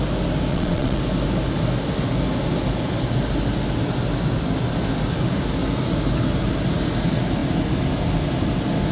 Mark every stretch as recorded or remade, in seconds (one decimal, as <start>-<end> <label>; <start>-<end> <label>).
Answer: 0.0-0.5 recorded; 0.5-1.0 remade; 1.0-8.9 recorded